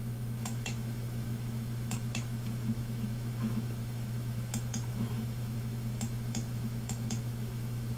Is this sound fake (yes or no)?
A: yes